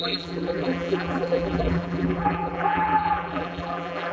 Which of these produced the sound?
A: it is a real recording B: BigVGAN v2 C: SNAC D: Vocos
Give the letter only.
B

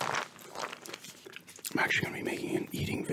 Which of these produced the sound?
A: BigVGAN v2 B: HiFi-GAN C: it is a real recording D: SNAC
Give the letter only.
C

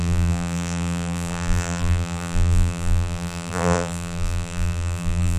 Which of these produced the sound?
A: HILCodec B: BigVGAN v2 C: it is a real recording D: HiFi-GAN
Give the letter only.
B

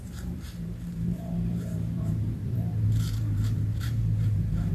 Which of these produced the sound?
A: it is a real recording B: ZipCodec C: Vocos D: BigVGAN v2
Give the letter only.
D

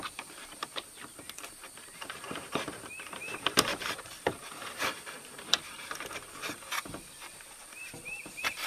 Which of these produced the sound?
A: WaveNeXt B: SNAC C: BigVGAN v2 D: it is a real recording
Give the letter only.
C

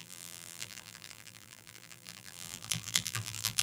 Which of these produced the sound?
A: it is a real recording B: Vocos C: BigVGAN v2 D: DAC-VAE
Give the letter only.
C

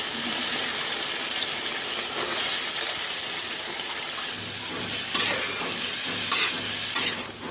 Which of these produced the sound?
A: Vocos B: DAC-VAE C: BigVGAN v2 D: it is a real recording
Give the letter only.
C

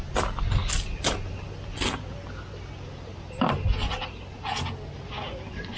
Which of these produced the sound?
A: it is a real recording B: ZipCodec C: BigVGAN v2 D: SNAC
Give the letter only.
A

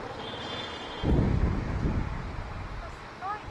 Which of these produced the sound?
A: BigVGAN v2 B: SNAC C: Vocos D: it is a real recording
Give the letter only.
D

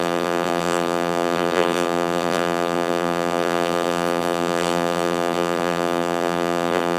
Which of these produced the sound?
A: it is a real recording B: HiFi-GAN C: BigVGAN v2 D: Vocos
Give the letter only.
C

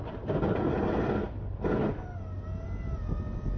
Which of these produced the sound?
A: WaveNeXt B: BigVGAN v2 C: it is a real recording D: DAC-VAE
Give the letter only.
C